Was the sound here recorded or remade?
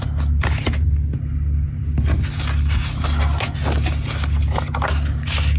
recorded